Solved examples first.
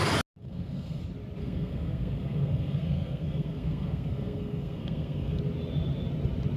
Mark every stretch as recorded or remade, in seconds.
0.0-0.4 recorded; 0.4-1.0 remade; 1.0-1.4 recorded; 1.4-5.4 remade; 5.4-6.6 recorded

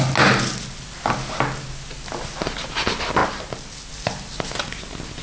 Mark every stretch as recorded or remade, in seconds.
0.0-5.2 recorded

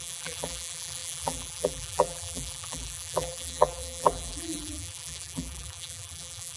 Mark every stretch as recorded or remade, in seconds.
0.0-6.6 remade

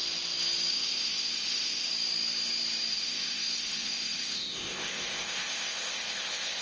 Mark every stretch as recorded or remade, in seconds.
0.0-0.7 recorded; 0.7-1.9 remade; 1.9-2.9 recorded; 2.9-6.6 remade

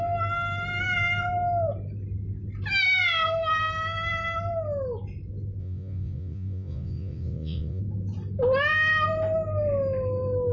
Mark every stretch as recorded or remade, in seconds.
0.0-5.6 recorded; 5.6-7.8 remade; 7.8-10.5 recorded

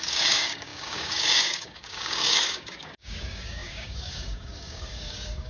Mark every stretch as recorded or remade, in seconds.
0.0-5.5 remade

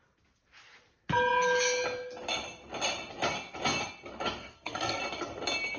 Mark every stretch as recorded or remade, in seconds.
0.0-4.4 recorded; 4.4-5.0 remade; 5.0-5.8 recorded

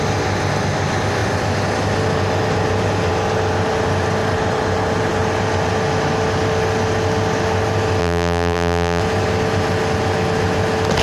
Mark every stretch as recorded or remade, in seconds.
0.0-8.0 recorded; 8.0-9.0 remade; 9.0-11.0 recorded